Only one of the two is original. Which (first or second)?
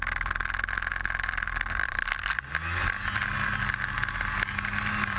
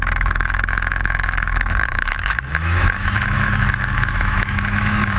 first